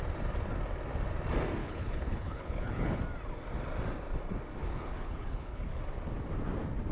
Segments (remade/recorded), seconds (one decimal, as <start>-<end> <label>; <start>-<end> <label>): 0.0-1.6 recorded; 1.6-3.0 remade; 3.0-4.6 recorded; 4.6-5.8 remade; 5.8-6.9 recorded